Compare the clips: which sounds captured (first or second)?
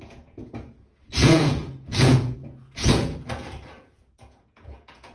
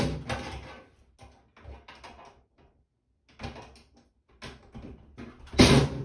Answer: second